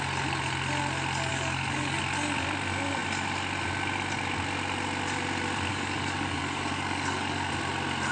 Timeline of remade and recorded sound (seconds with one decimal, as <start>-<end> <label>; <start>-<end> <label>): 0.0-1.3 recorded; 1.3-2.0 remade; 2.0-5.7 recorded; 5.7-7.5 remade; 7.5-8.1 recorded